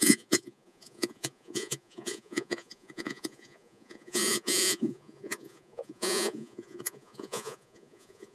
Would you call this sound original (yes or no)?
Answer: no